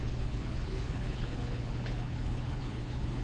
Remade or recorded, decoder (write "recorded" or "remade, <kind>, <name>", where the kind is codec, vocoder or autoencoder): remade, codec, HILCodec